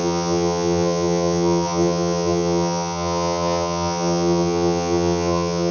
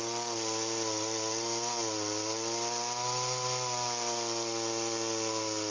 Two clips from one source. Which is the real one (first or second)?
second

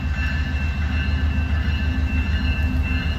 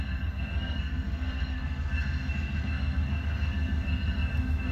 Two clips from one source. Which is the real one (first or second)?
first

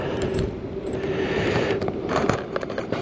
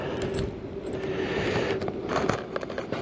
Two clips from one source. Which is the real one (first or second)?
second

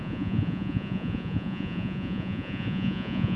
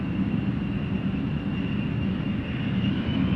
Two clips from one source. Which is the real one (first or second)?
second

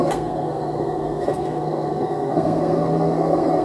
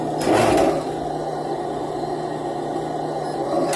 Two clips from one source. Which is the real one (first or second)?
second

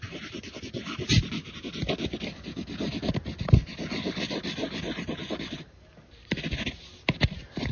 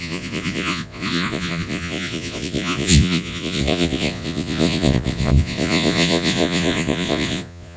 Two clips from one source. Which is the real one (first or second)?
first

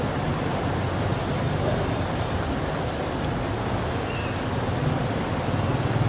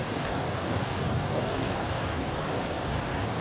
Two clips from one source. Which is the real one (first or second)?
first